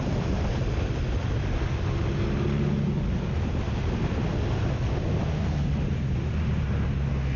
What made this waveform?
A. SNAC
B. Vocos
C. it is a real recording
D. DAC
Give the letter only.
C